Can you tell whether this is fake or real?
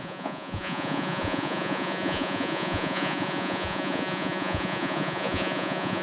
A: fake